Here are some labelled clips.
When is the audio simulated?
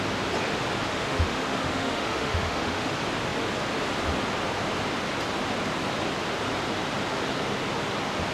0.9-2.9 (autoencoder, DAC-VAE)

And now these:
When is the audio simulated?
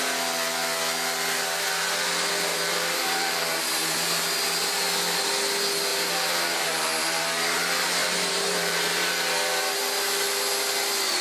2.5-3.6 (vocoder, BigVGAN v2); 5.9-7.2; 8.0-8.9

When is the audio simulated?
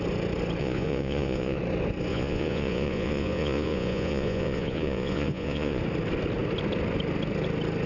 0.6-1.6 (vocoder, Vocos); 2.1-5.8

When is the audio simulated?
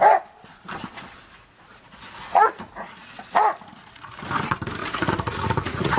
1.2-4.2 (vocoder, Vocos); 4.8-6.0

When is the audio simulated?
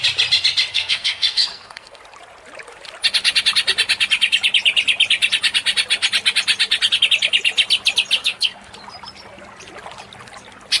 0.7-2.0 (codec, SNAC); 8.2-8.7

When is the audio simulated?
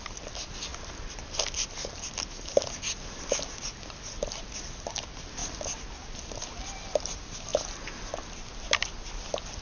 none